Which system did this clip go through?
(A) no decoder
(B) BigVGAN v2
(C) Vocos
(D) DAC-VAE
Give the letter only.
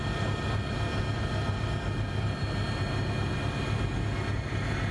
A